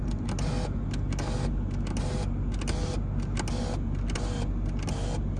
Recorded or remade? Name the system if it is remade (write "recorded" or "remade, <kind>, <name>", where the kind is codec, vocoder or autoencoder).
recorded